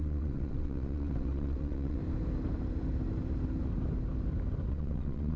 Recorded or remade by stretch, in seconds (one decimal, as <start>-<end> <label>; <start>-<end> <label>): 0.0-2.0 remade; 2.0-4.7 recorded; 4.7-5.4 remade